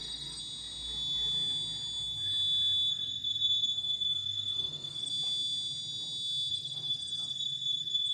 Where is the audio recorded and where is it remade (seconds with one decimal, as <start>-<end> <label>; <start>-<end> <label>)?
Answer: 0.0-0.4 remade; 0.4-2.9 recorded; 2.9-5.1 remade; 5.1-6.5 recorded; 6.5-8.1 remade